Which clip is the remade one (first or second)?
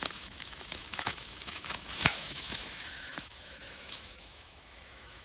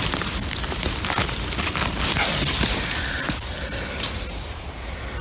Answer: first